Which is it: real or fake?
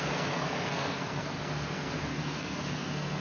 fake